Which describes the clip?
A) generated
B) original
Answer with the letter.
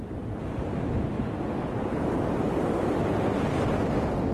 B